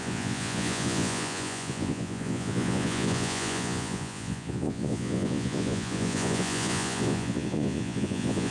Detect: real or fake fake